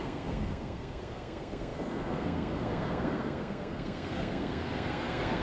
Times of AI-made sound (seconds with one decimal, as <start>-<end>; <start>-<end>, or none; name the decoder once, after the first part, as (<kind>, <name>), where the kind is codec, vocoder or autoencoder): 0.0-5.4 (codec, SNAC)